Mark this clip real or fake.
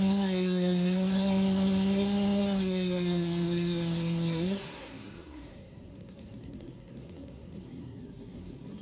fake